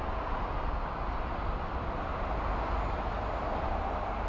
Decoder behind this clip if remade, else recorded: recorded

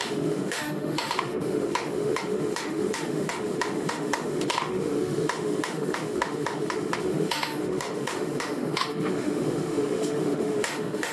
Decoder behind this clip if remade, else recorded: remade, autoencoder, DAC-VAE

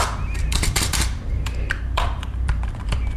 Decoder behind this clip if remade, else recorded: remade, vocoder, BigVGAN v2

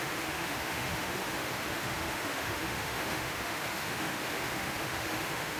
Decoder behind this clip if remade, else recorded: remade, autoencoder, DAC-VAE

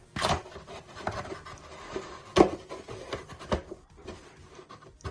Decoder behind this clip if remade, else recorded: recorded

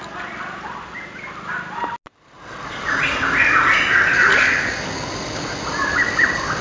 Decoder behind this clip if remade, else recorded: recorded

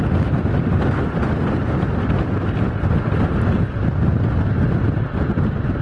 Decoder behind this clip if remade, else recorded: recorded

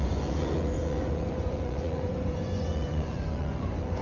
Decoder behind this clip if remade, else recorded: remade, vocoder, Vocos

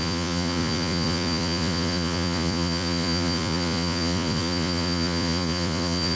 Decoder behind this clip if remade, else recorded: remade, vocoder, Vocos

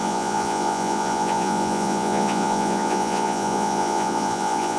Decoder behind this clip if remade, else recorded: remade, vocoder, Vocos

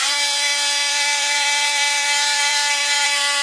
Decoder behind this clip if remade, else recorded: remade, vocoder, BigVGAN v2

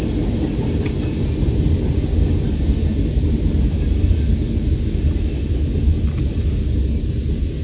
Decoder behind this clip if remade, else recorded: recorded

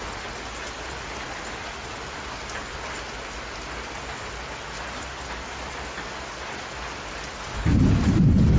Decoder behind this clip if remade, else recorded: recorded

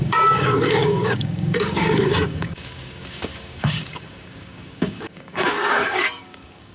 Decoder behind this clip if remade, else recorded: remade, codec, DAC